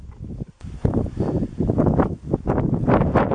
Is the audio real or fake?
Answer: real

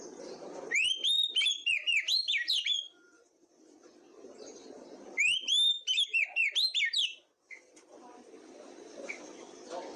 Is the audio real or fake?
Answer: fake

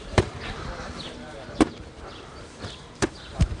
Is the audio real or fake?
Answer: fake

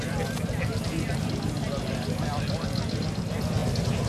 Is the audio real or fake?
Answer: real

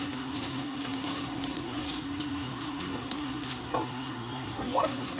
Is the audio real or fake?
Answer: fake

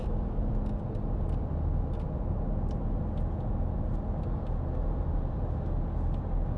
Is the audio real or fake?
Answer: real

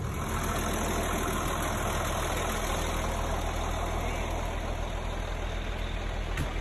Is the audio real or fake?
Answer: real